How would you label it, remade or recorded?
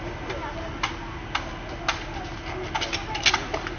recorded